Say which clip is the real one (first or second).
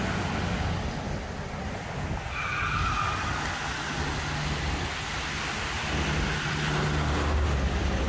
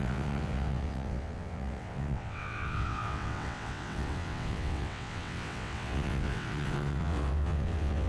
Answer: first